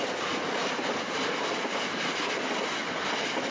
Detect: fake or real real